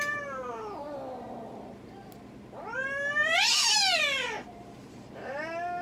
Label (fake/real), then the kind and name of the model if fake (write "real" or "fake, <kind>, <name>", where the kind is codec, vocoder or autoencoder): real